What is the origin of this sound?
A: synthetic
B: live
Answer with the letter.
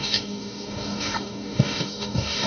A